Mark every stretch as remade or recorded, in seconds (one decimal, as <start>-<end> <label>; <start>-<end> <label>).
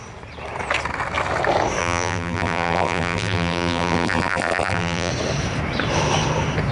0.0-1.8 recorded; 1.8-5.1 remade; 5.1-6.7 recorded